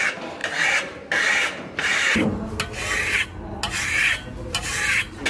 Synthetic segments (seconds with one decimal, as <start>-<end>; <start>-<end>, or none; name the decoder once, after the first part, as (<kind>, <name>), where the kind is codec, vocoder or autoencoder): 0.4-2.5 (vocoder, BigVGAN v2); 4.0-4.8